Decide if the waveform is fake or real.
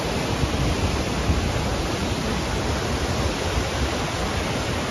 real